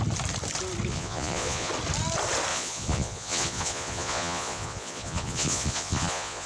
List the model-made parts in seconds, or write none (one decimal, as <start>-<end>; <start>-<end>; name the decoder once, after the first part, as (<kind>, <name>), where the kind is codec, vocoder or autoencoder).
0.9-1.7 (vocoder, Vocos); 2.5-6.5